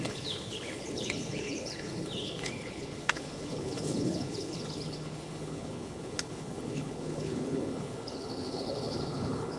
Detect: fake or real fake